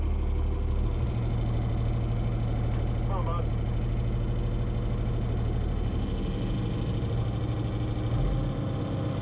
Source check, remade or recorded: recorded